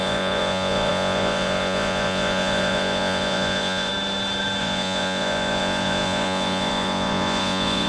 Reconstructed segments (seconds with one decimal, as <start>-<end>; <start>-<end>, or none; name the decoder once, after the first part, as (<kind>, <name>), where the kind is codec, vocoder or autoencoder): 0.0-3.9 (vocoder, Vocos); 4.6-7.9